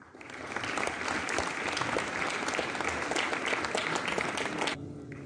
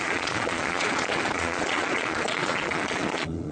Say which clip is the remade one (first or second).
second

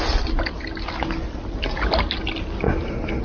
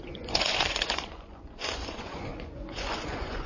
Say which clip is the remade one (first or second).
second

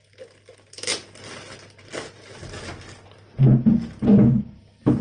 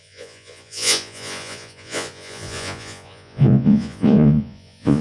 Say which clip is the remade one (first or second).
second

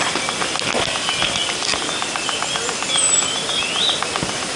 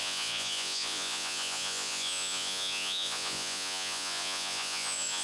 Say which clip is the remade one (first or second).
second